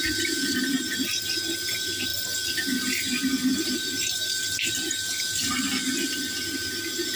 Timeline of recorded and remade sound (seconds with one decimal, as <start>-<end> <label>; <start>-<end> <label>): 0.0-2.1 recorded; 2.1-5.2 remade; 5.2-7.2 recorded